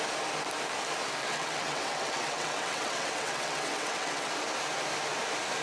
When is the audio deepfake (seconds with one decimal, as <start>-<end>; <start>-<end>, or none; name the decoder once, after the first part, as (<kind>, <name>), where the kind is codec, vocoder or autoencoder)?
1.2-4.3 (vocoder, WaveNeXt)